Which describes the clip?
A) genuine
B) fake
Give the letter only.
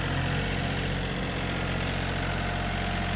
A